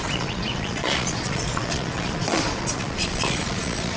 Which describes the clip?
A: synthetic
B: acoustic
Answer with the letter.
A